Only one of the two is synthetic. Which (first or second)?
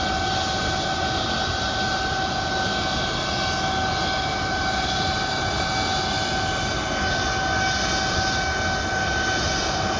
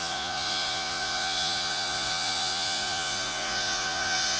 second